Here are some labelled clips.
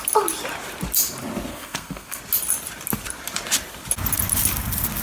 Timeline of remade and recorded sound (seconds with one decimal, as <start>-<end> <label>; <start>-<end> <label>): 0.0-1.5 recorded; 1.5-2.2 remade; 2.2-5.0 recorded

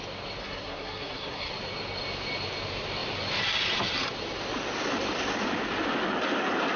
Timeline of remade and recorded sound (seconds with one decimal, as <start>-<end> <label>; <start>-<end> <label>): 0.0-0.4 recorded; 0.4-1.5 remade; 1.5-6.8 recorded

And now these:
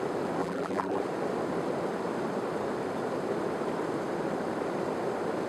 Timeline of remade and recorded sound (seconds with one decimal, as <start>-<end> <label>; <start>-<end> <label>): 0.0-0.4 recorded; 0.4-1.0 remade; 1.0-5.5 recorded

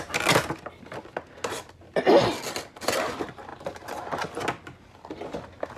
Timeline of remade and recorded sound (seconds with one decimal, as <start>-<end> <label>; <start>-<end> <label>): 0.0-5.8 recorded

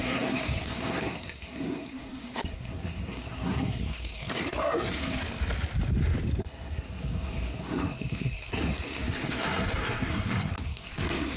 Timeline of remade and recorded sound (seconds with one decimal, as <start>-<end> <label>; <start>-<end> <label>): 0.0-5.2 remade; 5.2-6.4 recorded; 6.4-11.4 remade

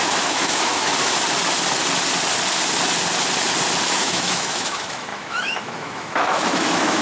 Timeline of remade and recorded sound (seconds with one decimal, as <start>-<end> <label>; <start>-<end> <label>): 0.0-0.9 remade; 0.9-3.9 recorded; 3.9-7.0 remade

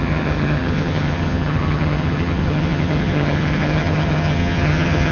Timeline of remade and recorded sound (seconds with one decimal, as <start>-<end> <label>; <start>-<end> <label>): 0.0-5.1 remade

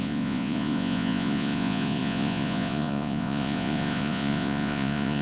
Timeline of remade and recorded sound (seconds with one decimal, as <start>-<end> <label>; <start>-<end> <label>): 0.0-5.2 remade